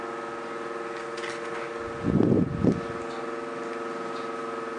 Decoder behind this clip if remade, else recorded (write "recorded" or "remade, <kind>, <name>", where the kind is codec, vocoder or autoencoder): recorded